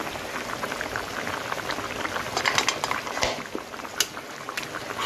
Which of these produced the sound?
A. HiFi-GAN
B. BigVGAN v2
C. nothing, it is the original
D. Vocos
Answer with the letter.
C